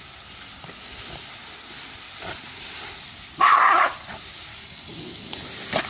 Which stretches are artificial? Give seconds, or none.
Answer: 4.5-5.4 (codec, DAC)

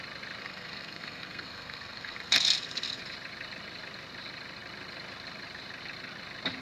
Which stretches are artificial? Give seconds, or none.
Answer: 0.4-3.0 (codec, SNAC)